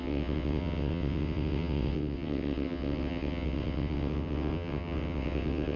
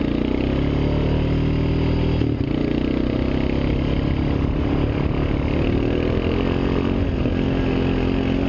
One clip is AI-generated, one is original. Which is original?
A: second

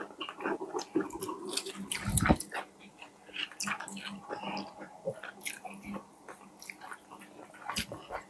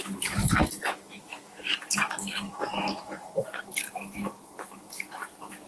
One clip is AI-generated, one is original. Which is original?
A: first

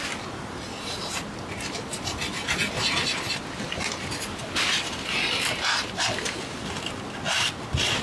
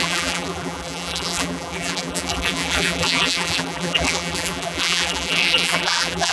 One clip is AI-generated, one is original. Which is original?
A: first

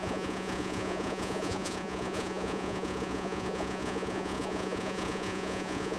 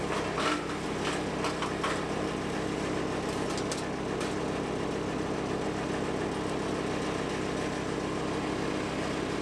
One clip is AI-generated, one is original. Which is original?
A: second